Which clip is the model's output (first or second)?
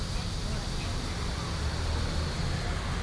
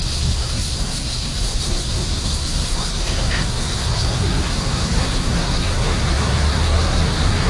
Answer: second